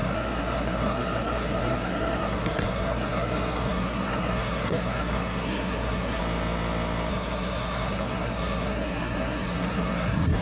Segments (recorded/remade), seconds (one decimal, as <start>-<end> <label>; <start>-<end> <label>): 0.0-6.2 remade; 6.2-7.1 recorded; 7.1-10.4 remade